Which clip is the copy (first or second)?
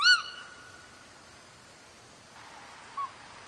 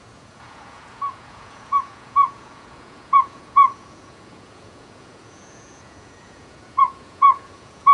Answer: second